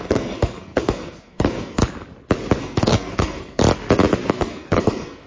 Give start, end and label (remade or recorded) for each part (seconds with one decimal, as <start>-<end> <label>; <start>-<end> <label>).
0.0-1.8 remade; 1.8-2.6 recorded; 2.6-3.6 remade; 3.6-4.3 recorded; 4.3-5.3 remade